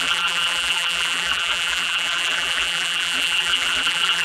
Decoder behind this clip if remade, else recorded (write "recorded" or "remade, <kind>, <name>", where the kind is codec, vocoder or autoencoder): remade, vocoder, BigVGAN v2